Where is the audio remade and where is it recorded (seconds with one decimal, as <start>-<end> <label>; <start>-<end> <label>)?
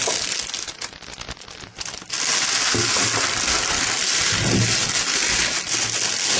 0.0-6.4 recorded